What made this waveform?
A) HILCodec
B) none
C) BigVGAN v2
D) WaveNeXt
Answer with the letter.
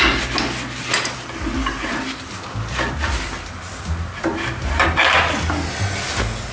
B